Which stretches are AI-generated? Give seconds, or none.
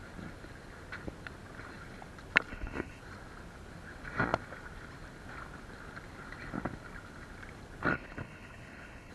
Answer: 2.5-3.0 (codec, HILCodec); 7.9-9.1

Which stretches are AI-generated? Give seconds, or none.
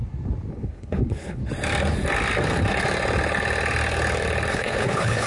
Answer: 0.5-1.4 (codec, HILCodec); 4.5-5.3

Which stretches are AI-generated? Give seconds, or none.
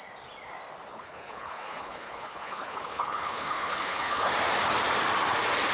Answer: 0.9-4.3 (codec, HILCodec)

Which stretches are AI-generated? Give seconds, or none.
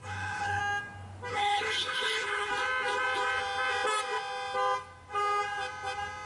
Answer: 0.0-0.6 (codec, HILCodec); 1.3-2.5